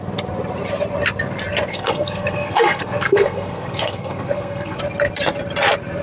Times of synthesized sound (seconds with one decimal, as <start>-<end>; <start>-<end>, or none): 1.7-4.8